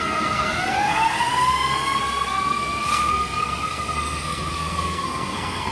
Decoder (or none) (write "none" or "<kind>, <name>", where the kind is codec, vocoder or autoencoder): codec, SNAC